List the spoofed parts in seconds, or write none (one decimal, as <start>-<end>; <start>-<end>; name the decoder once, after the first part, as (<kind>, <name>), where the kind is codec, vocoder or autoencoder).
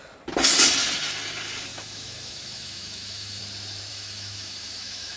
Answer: 1.7-3.4 (autoencoder, DAC-VAE); 3.9-5.2